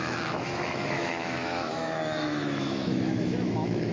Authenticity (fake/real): fake